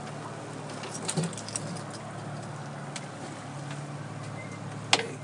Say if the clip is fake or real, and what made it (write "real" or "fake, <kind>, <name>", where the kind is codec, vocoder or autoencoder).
real